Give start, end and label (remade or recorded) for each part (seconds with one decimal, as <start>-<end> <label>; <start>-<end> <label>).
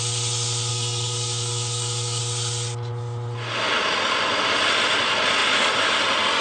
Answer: 0.0-0.7 recorded; 0.7-2.2 remade; 2.2-6.4 recorded